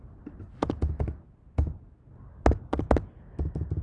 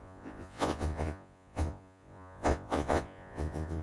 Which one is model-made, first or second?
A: second